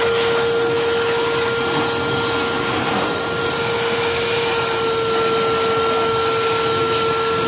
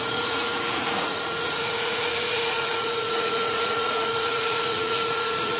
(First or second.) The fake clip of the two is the second